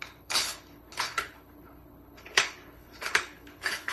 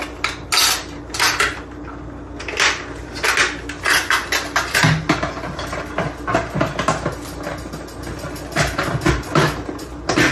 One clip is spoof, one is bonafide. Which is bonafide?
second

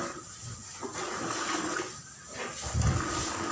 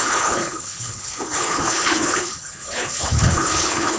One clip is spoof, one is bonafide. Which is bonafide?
first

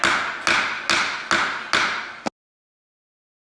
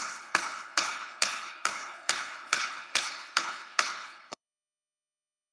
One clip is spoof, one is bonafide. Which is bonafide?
first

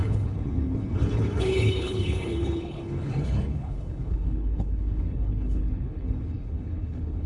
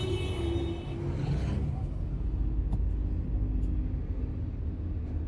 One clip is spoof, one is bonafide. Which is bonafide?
second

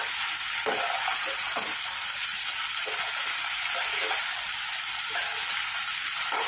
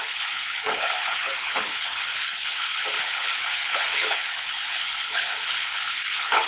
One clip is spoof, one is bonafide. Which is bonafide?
first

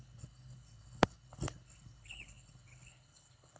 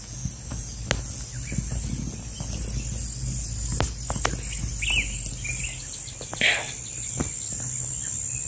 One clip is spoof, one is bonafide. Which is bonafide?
second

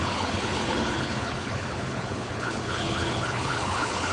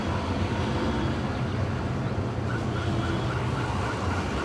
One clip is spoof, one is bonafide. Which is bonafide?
second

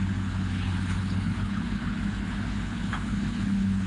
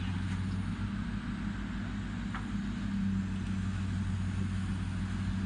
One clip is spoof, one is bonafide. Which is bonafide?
second